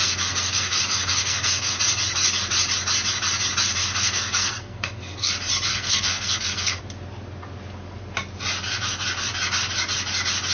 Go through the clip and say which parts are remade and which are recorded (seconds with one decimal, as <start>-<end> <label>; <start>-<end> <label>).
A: 0.0-1.8 remade; 1.8-3.8 recorded; 3.8-5.3 remade; 5.3-5.7 recorded; 5.7-6.8 remade; 6.8-10.5 recorded